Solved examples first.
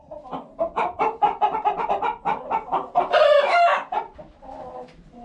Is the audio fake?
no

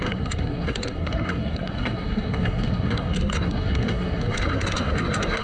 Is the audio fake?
yes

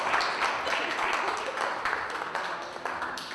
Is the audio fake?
no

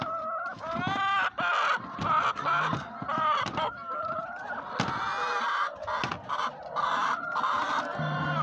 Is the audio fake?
no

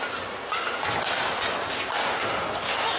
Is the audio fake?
no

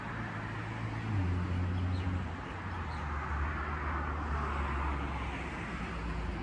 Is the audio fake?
no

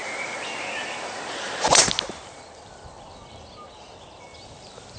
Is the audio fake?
no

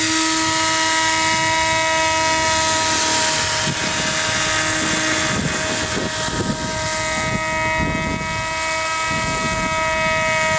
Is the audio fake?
no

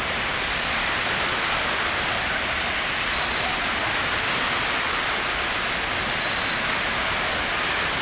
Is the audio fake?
no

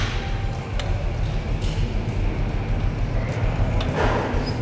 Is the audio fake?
no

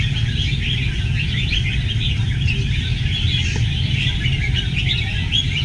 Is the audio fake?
no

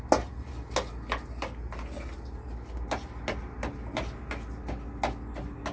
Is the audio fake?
no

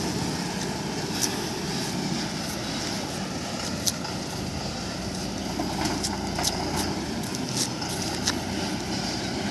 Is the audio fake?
no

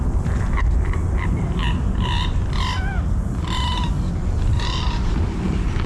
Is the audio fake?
no